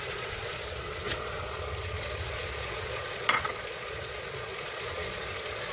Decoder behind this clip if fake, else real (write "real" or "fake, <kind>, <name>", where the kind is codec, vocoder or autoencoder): fake, vocoder, Vocos